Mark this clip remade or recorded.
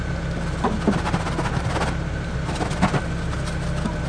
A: recorded